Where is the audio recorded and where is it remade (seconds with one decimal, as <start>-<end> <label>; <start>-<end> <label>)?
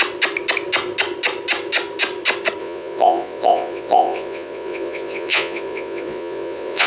0.0-2.6 recorded; 2.6-6.9 remade